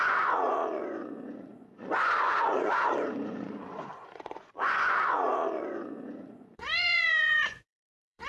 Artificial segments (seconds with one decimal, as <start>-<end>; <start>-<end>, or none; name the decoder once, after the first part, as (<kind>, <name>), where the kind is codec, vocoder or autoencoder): 0.0-8.3 (vocoder, Vocos)